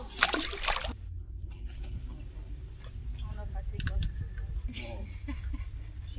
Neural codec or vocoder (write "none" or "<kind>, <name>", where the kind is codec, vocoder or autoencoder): vocoder, BigVGAN v2